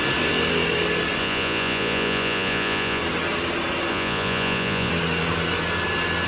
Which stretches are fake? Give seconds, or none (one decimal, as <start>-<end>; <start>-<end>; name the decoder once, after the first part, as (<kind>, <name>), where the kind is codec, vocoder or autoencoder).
1.2-3.0 (vocoder, Vocos); 3.9-4.9